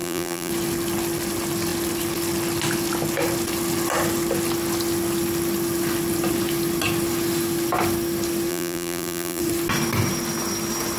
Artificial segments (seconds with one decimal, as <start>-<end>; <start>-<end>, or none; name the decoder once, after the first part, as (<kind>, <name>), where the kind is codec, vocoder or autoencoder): 0.0-0.5 (vocoder, BigVGAN v2); 8.5-9.4